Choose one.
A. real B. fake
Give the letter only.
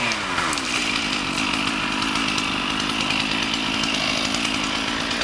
A